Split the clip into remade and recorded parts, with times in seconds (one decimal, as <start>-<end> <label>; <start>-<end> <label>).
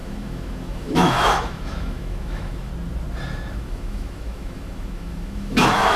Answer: 0.0-2.7 remade; 2.7-3.5 recorded; 3.5-6.0 remade